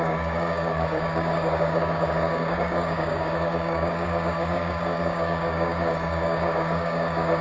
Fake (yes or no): yes